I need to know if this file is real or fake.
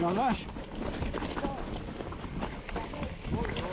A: real